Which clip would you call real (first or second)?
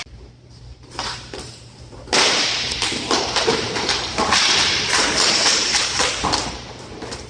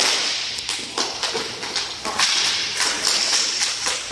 second